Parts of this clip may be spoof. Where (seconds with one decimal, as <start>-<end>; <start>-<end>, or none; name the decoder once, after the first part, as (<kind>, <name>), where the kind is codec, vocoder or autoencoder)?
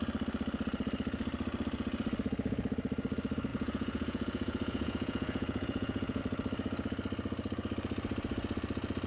3.5-6.2 (vocoder, Vocos)